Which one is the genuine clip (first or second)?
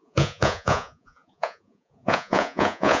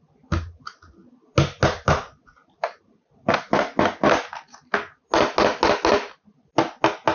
second